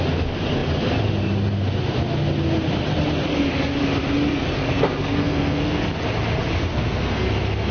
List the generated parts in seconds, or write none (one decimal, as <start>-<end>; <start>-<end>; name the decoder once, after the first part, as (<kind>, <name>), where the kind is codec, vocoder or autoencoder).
4.3-5.8 (codec, SNAC); 6.7-7.3